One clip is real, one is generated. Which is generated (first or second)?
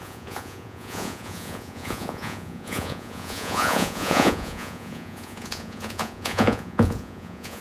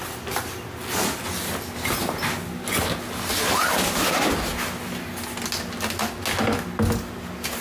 first